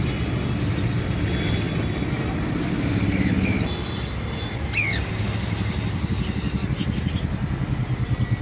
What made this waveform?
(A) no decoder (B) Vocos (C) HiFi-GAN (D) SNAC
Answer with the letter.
A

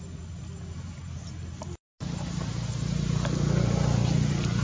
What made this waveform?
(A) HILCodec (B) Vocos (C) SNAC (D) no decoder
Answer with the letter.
D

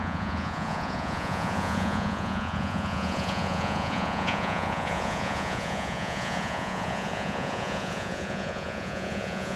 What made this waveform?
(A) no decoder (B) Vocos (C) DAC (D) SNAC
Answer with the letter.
B